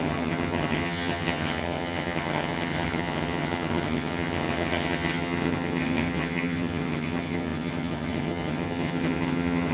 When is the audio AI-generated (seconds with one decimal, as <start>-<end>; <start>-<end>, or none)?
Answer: 0.0-9.7